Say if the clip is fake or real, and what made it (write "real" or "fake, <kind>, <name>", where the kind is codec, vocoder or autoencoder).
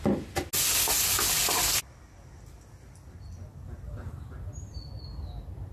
real